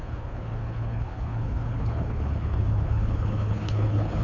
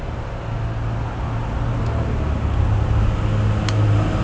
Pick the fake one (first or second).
first